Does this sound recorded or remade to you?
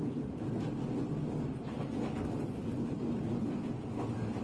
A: recorded